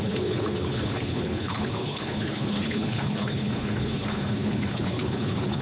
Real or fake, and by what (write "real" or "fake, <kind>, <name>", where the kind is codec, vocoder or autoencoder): fake, codec, HILCodec